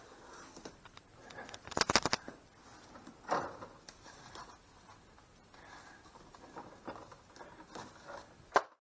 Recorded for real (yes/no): yes